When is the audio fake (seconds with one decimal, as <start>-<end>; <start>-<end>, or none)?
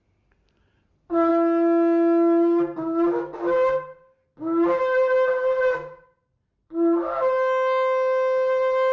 none